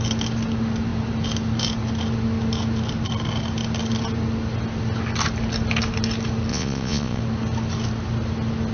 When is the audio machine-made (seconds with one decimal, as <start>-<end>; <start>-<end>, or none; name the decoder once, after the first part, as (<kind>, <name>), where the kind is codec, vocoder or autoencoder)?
6.5-7.2 (vocoder, Vocos)